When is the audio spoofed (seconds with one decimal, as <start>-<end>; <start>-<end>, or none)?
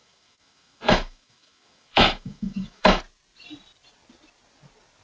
0.0-3.0